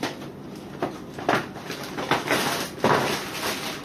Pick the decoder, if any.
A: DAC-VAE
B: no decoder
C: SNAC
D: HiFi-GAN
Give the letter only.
B